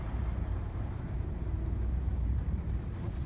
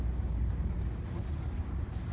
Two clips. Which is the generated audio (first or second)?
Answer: first